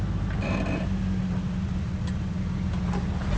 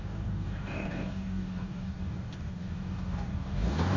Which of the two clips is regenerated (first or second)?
second